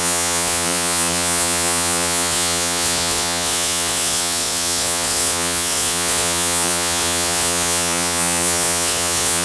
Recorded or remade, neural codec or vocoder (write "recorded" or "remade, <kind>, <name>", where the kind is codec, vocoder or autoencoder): remade, vocoder, Vocos